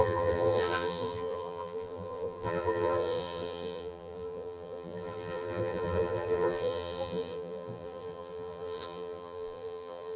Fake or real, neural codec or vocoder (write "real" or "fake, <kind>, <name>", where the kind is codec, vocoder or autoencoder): fake, vocoder, BigVGAN v2